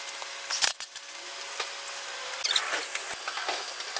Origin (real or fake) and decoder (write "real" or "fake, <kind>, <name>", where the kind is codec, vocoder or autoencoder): real